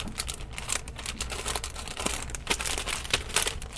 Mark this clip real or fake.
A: fake